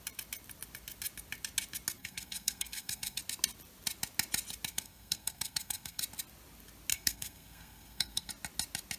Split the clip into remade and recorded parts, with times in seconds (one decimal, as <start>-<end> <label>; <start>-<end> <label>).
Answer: 0.0-2.0 recorded; 2.0-3.2 remade; 3.2-4.7 recorded; 4.7-6.0 remade; 6.0-6.9 recorded; 6.9-8.3 remade; 8.3-9.0 recorded